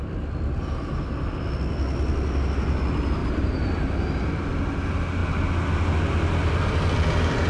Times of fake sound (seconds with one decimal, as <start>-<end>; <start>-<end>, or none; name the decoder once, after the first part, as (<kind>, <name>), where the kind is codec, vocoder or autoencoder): 3.2-4.4 (vocoder, BigVGAN v2)